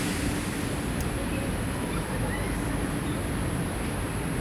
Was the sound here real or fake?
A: real